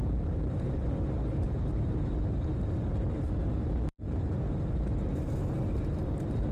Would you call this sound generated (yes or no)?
yes